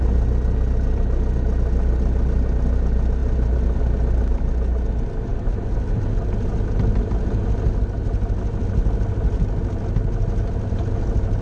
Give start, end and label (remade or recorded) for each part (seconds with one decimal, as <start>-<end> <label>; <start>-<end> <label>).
0.0-5.3 recorded; 5.3-5.9 remade; 5.9-11.4 recorded